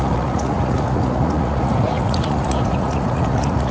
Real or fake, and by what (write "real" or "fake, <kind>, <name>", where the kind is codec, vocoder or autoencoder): fake, vocoder, Vocos